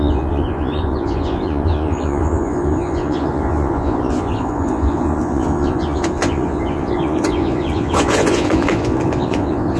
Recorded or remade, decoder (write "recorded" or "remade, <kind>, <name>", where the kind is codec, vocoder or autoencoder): remade, vocoder, Vocos